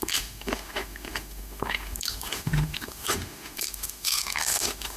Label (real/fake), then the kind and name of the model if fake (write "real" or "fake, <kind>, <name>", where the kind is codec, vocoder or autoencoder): fake, autoencoder, DAC-VAE